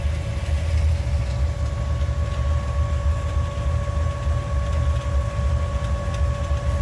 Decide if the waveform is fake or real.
real